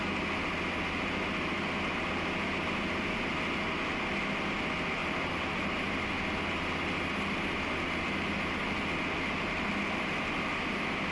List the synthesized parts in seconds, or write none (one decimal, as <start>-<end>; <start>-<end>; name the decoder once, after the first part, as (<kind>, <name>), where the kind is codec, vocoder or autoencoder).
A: 5.0-6.0 (vocoder, BigVGAN v2)